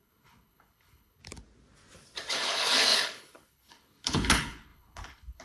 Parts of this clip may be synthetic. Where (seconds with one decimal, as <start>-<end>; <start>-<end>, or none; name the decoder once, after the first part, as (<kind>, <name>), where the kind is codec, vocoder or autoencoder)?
0.0-1.2 (codec, HILCodec); 2.3-5.4